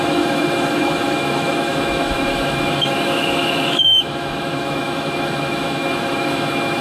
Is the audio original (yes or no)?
no